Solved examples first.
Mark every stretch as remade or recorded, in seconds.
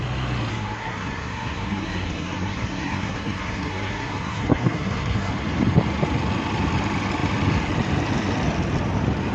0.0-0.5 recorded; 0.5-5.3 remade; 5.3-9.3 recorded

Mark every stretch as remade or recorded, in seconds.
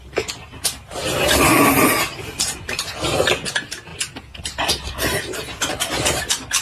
0.0-6.6 recorded